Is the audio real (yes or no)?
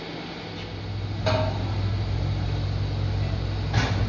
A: yes